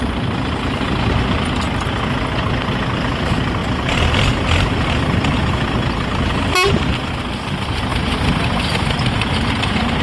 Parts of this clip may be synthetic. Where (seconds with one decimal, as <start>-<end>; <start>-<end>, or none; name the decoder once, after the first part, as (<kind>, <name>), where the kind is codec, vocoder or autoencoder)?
3.6-6.3 (vocoder, BigVGAN v2); 7.9-10.0